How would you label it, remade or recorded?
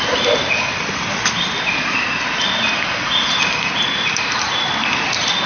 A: recorded